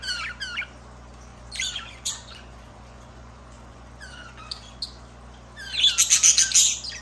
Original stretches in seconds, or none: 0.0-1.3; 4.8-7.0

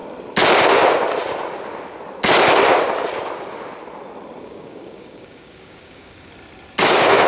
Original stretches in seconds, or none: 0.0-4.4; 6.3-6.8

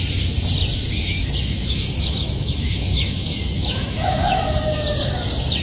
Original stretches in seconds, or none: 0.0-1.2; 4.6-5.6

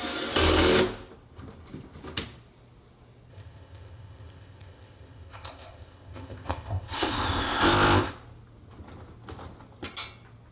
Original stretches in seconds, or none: 0.0-3.3; 8.1-10.5